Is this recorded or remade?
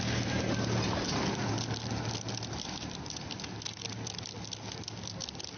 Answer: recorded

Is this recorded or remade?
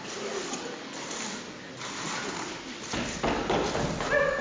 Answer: recorded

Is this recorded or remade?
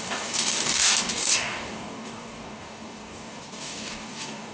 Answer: remade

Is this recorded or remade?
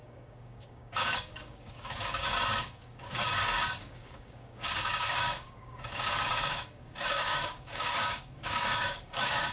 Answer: remade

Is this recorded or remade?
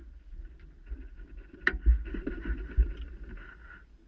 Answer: recorded